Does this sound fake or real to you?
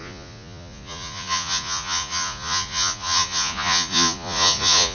fake